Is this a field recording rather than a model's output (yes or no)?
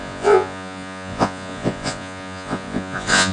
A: no